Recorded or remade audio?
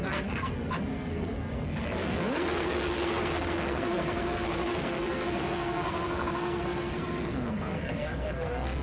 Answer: remade